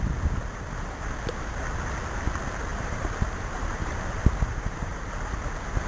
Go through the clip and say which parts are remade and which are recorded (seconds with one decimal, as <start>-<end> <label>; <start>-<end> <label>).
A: 0.0-2.7 recorded; 2.7-5.1 remade; 5.1-5.9 recorded